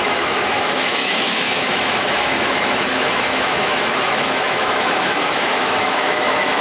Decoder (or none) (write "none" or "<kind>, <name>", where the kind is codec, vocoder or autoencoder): autoencoder, DAC-VAE